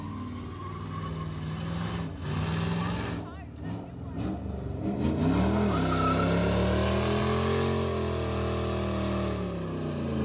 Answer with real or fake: real